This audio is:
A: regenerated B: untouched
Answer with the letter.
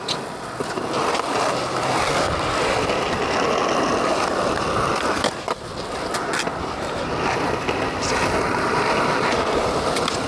B